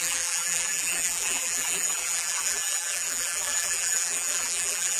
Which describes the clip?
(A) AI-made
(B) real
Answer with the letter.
A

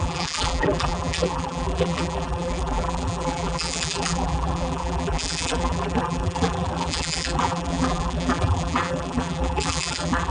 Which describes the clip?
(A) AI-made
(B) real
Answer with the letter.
A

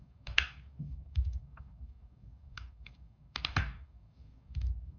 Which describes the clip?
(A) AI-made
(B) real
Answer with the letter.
A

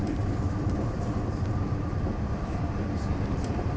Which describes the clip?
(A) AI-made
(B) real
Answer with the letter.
A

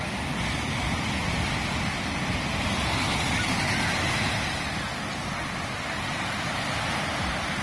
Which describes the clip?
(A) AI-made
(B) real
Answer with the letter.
B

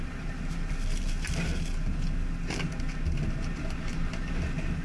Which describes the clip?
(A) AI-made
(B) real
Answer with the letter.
B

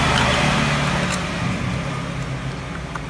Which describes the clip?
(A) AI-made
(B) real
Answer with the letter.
B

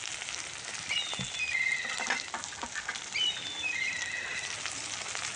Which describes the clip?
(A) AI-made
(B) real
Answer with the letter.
B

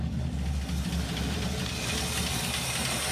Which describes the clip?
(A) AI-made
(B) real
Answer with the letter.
B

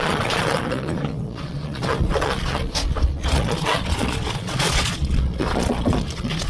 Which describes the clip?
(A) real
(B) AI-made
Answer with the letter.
B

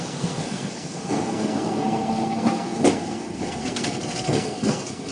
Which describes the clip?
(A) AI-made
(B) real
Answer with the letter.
A